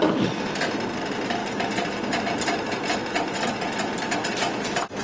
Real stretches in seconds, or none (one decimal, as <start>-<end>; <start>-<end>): 0.0-5.0